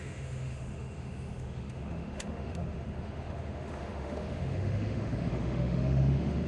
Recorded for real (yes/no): no